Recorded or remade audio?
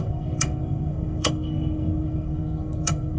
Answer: remade